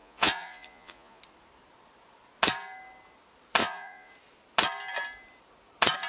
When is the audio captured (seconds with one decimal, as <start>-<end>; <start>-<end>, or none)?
1.2-3.6; 4.1-6.1